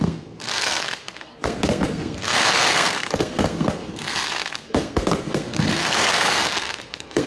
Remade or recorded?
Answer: remade